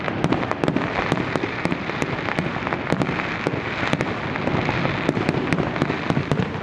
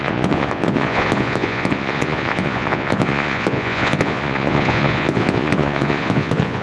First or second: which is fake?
second